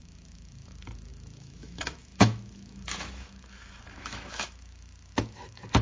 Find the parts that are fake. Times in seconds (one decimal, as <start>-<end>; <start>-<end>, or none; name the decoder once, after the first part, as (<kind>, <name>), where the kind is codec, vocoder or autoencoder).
0.0-5.8 (autoencoder, DAC-VAE)